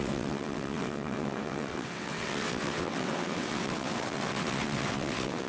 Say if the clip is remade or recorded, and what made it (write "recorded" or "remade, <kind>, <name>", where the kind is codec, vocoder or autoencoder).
remade, vocoder, WaveNeXt